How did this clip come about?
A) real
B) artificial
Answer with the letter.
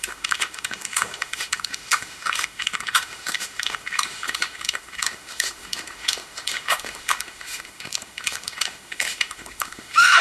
B